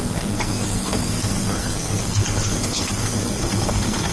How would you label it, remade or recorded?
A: remade